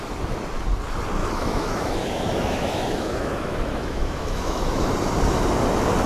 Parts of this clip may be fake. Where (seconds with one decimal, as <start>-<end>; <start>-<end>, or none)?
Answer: 1.2-4.9